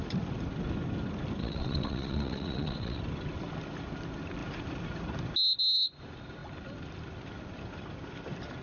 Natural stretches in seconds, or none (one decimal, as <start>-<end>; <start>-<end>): 0.0-1.4; 3.0-8.6